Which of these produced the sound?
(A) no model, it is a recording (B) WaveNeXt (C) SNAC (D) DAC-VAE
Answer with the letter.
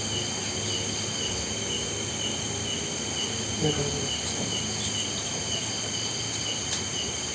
A